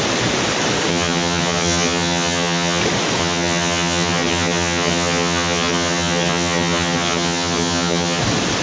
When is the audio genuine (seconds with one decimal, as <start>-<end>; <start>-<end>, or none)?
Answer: 0.0-0.9; 2.8-3.2; 8.2-8.6